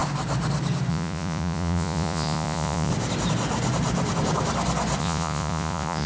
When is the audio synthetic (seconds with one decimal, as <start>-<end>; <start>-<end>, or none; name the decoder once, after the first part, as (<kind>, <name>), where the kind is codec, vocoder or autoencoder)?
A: 0.9-2.9 (vocoder, Vocos); 5.0-6.1